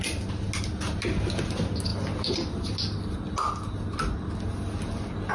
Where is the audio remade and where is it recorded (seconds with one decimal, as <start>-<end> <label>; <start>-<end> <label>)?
0.0-5.3 recorded